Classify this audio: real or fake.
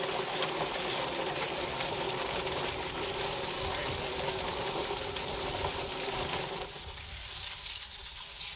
real